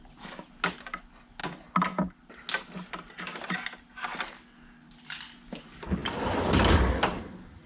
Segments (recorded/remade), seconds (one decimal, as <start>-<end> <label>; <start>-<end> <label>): 0.0-6.0 recorded; 6.0-7.2 remade; 7.2-7.7 recorded